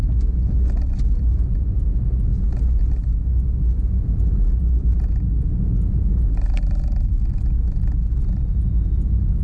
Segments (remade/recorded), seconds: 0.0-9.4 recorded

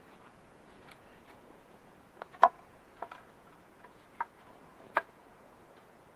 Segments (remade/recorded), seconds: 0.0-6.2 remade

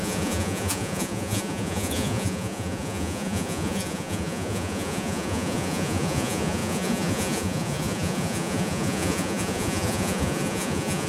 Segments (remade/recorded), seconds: 0.0-11.1 remade